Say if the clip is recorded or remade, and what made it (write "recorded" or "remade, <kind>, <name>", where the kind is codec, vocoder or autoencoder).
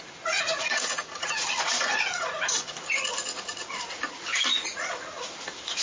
remade, vocoder, Vocos